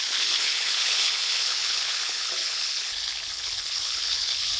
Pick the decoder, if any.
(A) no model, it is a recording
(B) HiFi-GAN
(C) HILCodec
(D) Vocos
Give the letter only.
C